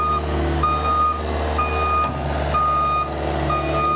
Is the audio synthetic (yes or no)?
no